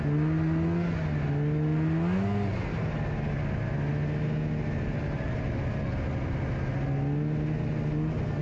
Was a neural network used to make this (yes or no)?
no